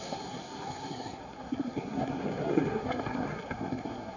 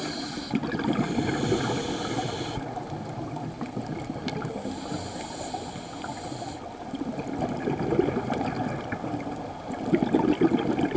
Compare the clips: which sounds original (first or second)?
second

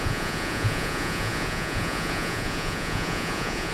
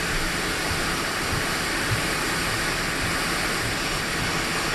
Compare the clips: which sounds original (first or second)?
second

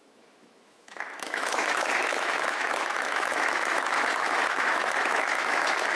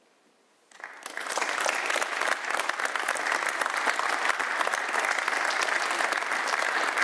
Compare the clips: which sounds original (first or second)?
second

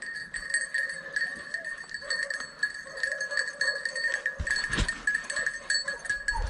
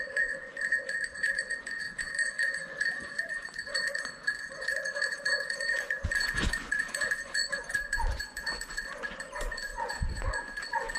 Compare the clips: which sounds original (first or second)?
first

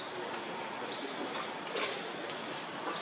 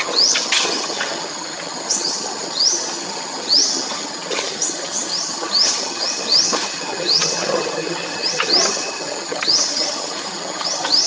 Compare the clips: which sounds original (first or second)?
first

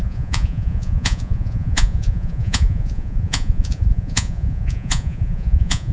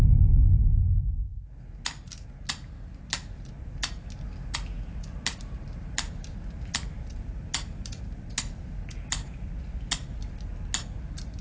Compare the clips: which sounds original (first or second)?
second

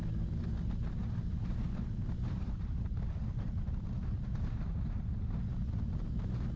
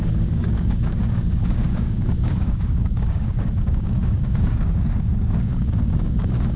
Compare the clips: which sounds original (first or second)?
first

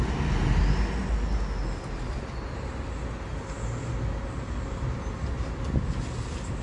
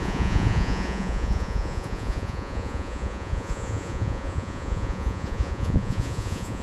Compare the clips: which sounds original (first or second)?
first